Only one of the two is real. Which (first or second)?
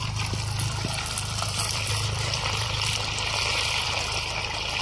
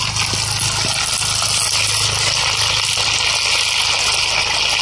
second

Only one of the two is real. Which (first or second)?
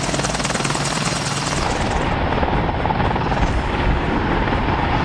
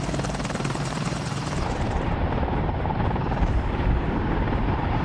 first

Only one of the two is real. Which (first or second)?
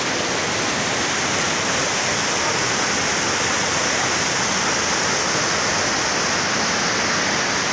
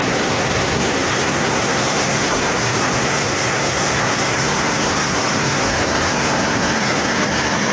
first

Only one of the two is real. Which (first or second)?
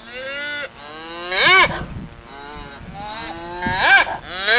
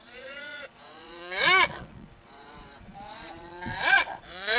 first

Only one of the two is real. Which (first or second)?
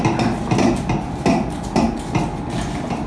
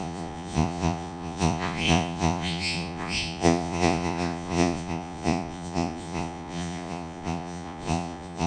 first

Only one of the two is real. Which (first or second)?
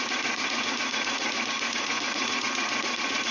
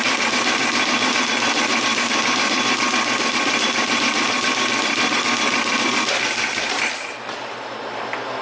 second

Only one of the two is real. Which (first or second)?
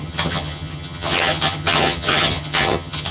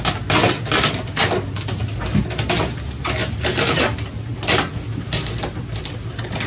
second